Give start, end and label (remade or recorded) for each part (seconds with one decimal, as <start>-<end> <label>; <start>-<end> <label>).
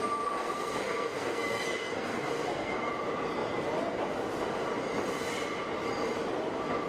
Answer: 0.0-2.9 remade; 2.9-6.9 recorded